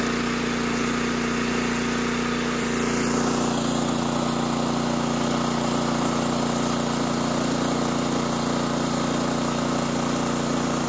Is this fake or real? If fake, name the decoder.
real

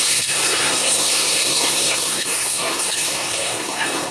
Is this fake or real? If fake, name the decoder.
fake, codec, SNAC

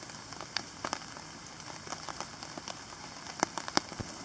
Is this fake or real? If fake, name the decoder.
real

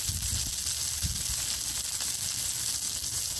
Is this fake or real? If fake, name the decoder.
real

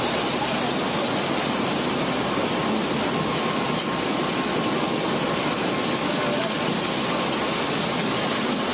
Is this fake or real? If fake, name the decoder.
real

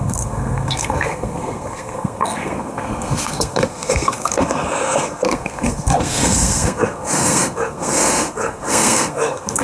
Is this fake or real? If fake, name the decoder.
fake, codec, SNAC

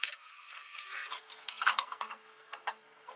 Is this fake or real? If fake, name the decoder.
fake, codec, SNAC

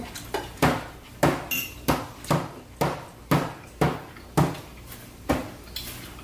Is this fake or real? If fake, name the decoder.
real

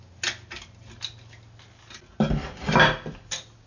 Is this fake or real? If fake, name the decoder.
real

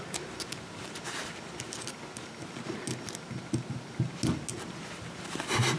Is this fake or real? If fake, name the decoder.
real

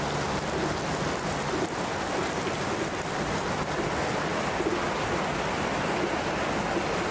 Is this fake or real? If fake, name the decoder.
real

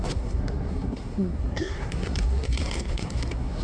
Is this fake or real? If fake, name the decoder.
fake, codec, SNAC